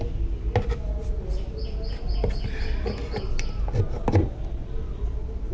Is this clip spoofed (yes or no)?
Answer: no